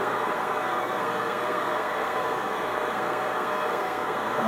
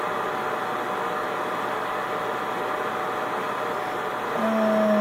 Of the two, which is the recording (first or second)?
second